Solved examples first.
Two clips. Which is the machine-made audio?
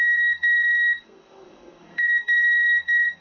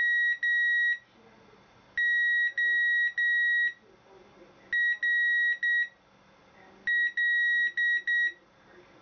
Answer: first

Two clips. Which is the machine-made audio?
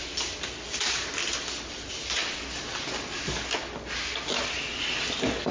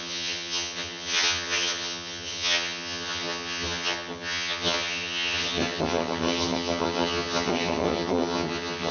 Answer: second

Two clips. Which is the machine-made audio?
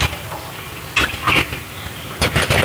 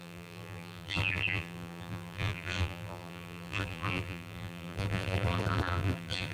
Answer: second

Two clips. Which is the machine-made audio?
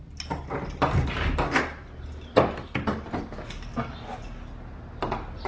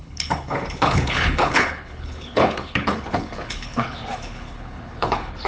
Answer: second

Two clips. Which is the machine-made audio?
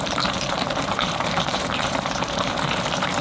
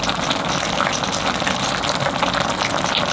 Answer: first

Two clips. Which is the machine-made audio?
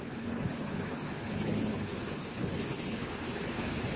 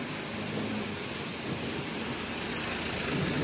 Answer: first